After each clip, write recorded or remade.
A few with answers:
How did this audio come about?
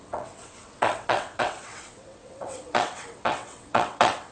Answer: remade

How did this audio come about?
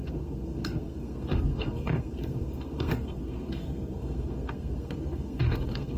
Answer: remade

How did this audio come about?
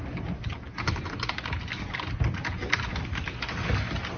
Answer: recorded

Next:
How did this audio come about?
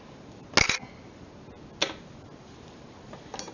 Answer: recorded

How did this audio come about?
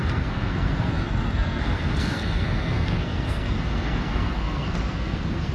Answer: remade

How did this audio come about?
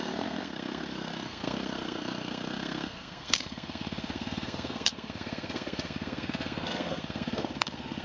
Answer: remade